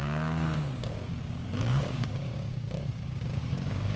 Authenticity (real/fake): fake